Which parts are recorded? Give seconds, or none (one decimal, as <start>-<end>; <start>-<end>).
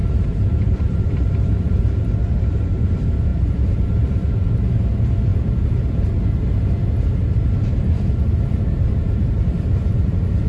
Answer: 5.3-5.8